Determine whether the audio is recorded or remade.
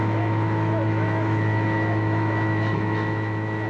remade